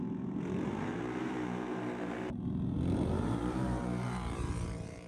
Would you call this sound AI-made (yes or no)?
yes